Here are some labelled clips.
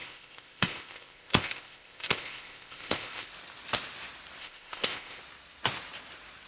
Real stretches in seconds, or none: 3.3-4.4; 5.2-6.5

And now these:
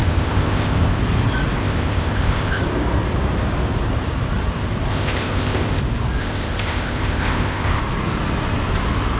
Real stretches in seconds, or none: 1.0-1.6; 2.6-4.9; 5.8-6.2; 7.8-9.2

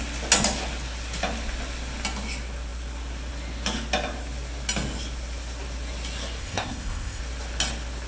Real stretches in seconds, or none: 0.0-6.4; 7.2-8.1

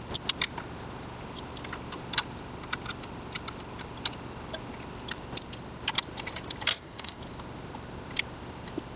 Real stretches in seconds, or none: 0.0-6.7; 7.2-9.0

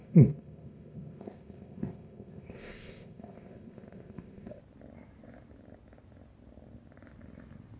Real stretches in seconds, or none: 4.6-7.8

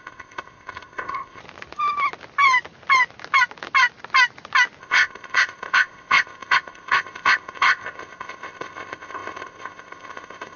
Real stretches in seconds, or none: 1.4-4.8